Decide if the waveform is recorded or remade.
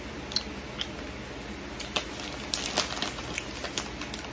recorded